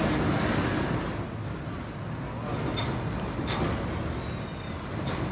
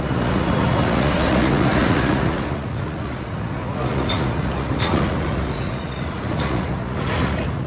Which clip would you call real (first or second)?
first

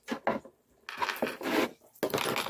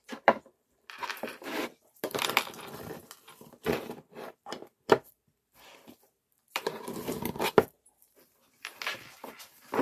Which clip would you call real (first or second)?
first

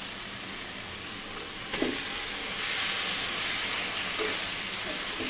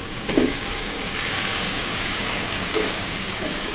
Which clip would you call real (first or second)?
first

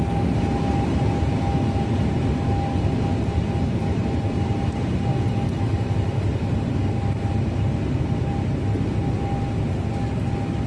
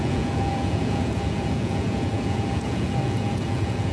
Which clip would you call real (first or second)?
first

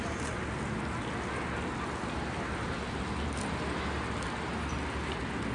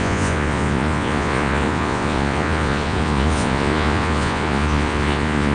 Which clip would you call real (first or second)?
first